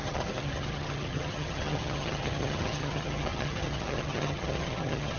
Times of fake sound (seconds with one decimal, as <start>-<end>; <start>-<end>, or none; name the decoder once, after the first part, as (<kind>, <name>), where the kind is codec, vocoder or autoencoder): 0.0-5.2 (vocoder, HiFi-GAN)